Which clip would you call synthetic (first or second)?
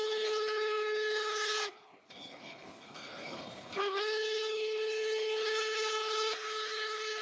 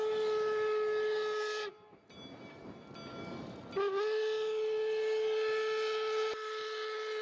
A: first